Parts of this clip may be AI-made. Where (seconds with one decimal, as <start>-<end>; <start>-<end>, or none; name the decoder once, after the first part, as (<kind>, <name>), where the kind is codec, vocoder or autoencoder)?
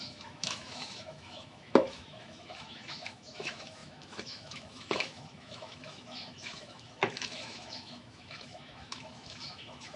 0.0-10.0 (autoencoder, DAC-VAE)